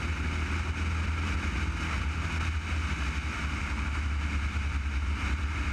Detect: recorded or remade recorded